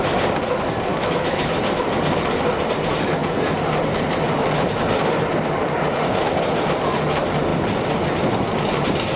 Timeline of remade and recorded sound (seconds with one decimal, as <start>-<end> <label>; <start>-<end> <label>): 0.0-0.9 recorded; 0.9-1.6 remade; 1.6-9.2 recorded